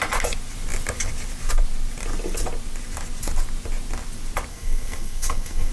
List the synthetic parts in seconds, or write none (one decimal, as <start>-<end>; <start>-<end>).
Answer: 4.5-5.7

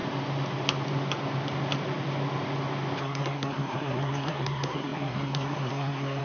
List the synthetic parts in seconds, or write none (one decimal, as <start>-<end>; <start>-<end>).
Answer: 3.0-6.2

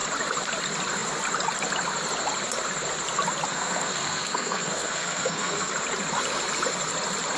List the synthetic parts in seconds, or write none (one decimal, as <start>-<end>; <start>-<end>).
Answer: 3.5-5.7

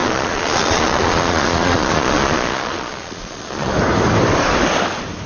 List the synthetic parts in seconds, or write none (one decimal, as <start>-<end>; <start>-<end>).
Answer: 0.0-3.7

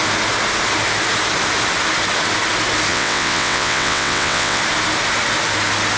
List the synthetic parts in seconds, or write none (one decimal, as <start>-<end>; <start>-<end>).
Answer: 2.9-4.6